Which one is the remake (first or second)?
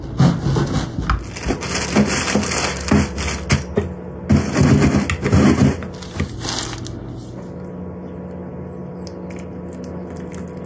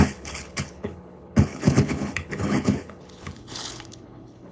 second